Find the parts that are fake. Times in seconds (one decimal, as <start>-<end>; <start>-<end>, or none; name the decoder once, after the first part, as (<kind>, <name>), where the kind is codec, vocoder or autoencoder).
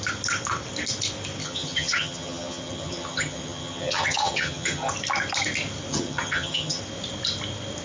1.4-4.9 (vocoder, HiFi-GAN); 5.9-6.8